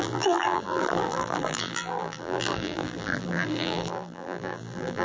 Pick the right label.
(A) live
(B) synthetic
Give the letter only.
B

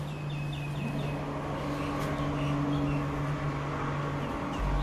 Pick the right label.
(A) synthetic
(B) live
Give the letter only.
B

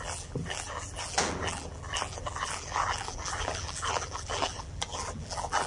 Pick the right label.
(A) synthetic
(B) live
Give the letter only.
A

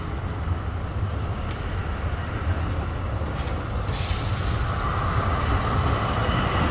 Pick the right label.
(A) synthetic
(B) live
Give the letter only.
B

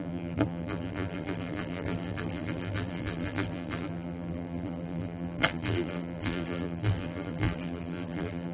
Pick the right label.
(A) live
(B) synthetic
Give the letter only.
B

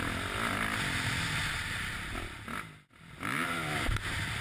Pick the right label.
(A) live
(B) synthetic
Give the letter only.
A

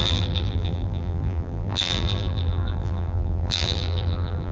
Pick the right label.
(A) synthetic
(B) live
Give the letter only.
A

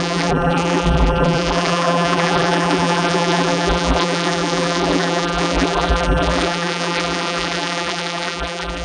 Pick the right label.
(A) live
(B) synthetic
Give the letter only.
B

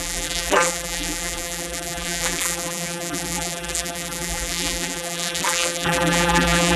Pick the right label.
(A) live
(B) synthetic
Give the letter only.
B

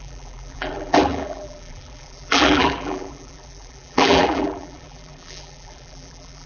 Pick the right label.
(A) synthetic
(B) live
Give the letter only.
A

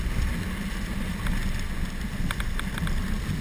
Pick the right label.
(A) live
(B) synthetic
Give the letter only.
A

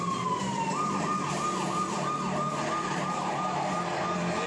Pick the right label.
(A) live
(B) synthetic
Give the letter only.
A